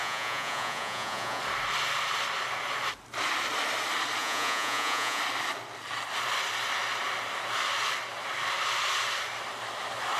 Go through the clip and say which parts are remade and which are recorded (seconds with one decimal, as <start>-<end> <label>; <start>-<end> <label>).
0.0-1.4 remade; 1.4-4.2 recorded; 4.2-5.2 remade; 5.2-10.2 recorded